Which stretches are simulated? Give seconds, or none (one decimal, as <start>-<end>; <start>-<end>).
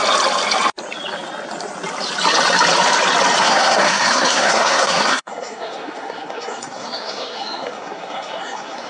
3.4-8.9